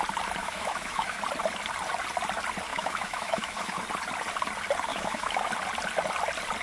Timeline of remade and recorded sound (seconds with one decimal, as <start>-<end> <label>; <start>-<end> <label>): 0.0-0.4 recorded; 0.4-1.2 remade; 1.2-2.7 recorded; 2.7-3.8 remade; 3.8-4.9 recorded; 4.9-5.5 remade; 5.5-6.6 recorded